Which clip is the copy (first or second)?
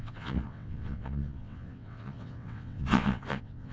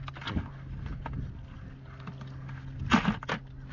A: first